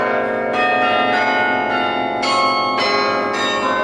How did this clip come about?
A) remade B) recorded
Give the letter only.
B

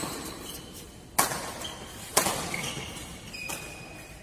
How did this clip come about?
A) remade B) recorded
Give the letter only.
B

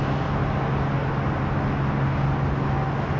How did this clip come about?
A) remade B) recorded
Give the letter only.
B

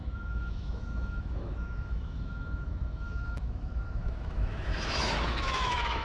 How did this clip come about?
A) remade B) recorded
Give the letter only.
A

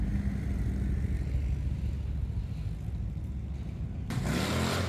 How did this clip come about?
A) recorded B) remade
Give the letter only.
A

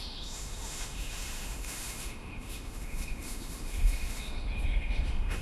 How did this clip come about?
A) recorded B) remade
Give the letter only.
B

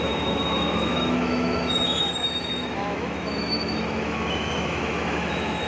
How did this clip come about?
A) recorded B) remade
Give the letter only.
B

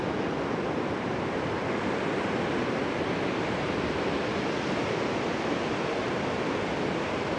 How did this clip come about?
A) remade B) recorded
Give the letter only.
B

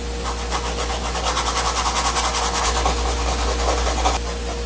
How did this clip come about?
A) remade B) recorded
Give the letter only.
B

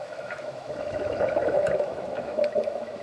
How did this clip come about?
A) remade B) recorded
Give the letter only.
A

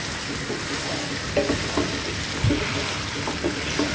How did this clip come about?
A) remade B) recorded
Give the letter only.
B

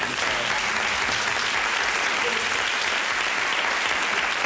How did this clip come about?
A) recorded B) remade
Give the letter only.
A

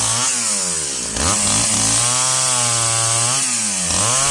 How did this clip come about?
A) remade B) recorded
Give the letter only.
B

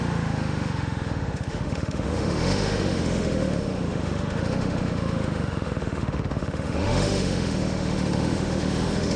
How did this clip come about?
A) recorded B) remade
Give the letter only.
B